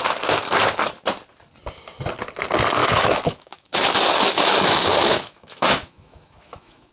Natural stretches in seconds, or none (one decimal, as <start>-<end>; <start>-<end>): 0.0-2.8